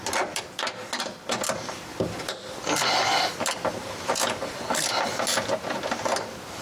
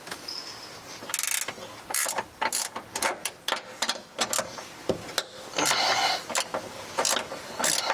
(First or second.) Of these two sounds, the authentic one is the second